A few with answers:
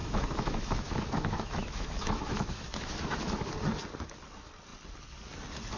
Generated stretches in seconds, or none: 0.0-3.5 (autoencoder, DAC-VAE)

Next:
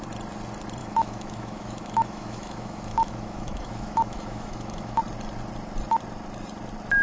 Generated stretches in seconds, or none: 0.8-5.0 (autoencoder, DAC-VAE)